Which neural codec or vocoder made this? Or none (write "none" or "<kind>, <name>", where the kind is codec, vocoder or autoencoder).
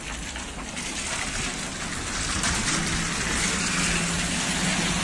none